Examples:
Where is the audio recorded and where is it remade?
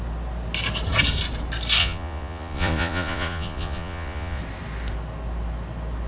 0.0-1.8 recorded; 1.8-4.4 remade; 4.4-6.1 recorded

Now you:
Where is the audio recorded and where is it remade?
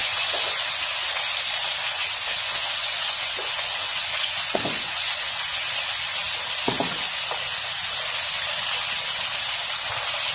0.0-0.6 remade; 0.6-1.9 recorded; 1.9-5.8 remade; 5.8-10.3 recorded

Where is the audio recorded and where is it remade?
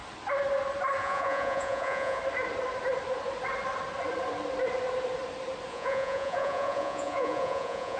0.0-1.0 recorded; 1.0-2.2 remade; 2.2-5.7 recorded; 5.7-8.0 remade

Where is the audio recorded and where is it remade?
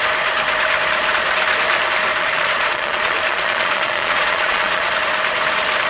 0.0-2.1 recorded; 2.1-4.9 remade; 4.9-5.9 recorded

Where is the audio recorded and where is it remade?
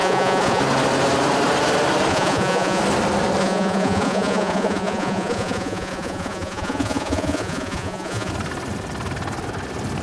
0.0-0.6 remade; 0.6-2.1 recorded; 2.1-2.8 remade; 2.8-3.4 recorded; 3.4-8.3 remade; 8.3-10.0 recorded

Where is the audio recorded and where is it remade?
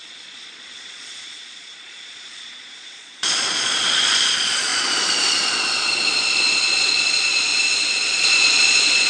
0.0-7.5 remade; 7.5-8.0 recorded; 8.0-9.1 remade